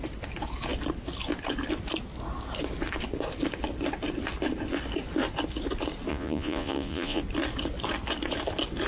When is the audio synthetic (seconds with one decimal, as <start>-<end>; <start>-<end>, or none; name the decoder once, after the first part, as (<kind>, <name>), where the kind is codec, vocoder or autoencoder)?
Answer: 6.1-7.2 (vocoder, Vocos)

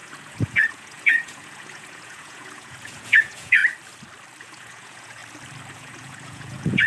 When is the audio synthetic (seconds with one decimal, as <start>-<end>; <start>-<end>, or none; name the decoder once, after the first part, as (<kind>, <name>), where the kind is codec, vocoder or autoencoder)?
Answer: 0.0-3.6 (vocoder, Vocos); 4.4-5.2; 5.7-6.9

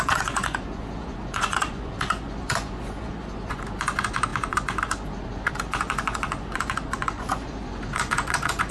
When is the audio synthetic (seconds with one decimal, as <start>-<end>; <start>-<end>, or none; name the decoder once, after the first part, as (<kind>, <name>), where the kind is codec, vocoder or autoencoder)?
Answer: 0.0-8.7 (vocoder, Vocos)

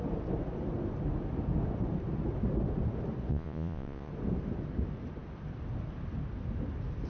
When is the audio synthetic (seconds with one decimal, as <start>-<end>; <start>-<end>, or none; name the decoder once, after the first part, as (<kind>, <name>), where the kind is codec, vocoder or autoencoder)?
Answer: 3.3-4.1 (vocoder, Vocos)

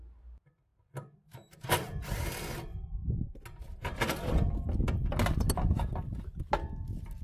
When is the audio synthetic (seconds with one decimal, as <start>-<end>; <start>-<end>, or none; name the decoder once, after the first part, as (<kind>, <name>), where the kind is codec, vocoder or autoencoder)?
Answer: none

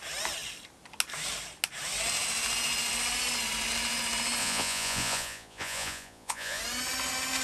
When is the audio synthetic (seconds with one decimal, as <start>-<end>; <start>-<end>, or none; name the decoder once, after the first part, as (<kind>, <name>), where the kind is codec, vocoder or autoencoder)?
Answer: 4.4-6.6 (vocoder, Vocos)